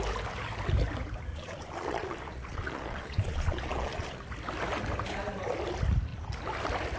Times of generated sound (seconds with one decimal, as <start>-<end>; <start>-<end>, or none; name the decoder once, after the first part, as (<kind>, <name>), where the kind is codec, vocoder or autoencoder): 1.3-4.2 (vocoder, Vocos)